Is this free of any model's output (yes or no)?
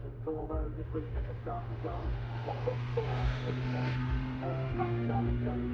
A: no